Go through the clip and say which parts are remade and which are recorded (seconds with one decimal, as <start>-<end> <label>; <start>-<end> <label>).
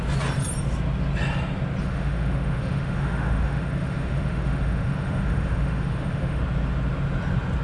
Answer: 0.0-1.8 recorded; 1.8-6.4 remade; 6.4-7.6 recorded